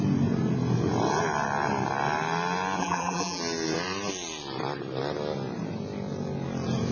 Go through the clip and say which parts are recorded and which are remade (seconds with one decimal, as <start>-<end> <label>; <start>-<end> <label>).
0.0-2.8 recorded; 2.8-3.4 remade; 3.4-6.9 recorded